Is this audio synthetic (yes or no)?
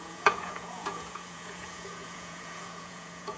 yes